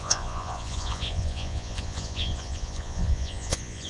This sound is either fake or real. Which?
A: fake